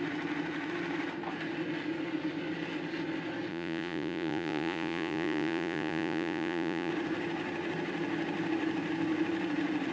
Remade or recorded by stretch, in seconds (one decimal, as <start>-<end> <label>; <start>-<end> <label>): 0.0-3.5 recorded; 3.5-6.9 remade; 6.9-9.9 recorded